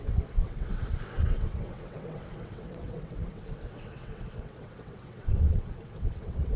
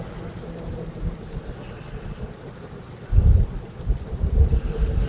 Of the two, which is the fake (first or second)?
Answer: first